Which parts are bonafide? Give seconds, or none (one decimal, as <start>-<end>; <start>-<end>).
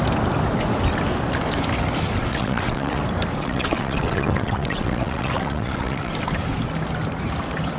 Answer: 0.0-2.3; 3.0-3.4; 6.1-7.8